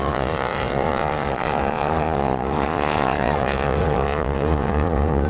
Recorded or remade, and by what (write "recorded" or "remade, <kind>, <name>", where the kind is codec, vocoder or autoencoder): remade, vocoder, Vocos